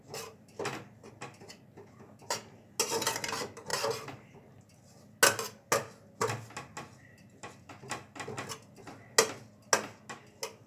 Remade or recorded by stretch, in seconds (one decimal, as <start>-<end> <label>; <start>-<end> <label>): 0.0-10.7 recorded